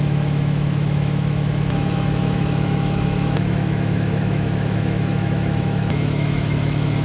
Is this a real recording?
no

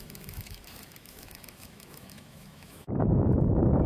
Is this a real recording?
no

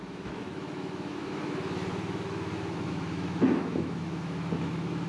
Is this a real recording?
no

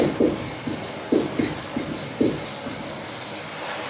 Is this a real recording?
yes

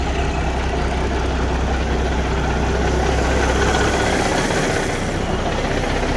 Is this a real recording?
yes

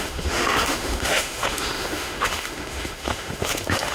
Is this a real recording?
no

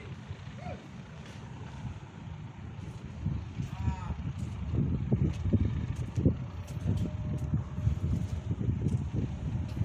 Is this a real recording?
yes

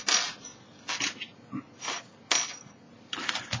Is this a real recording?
yes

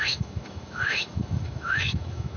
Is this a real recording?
no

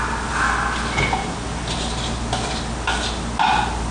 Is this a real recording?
yes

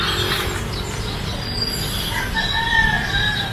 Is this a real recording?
yes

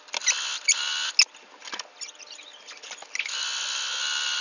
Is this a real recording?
yes